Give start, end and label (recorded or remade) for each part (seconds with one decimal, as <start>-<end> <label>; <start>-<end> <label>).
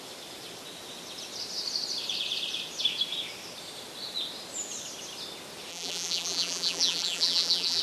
0.0-5.7 recorded; 5.7-7.8 remade